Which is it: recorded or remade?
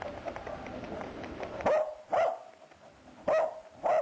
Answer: recorded